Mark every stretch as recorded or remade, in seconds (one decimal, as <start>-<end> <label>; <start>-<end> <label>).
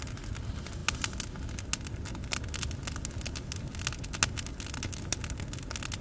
0.0-6.0 recorded